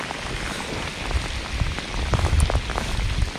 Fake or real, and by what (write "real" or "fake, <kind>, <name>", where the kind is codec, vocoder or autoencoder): real